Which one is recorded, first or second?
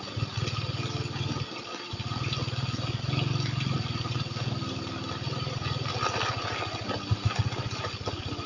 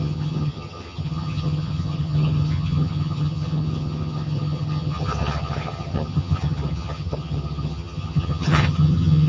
first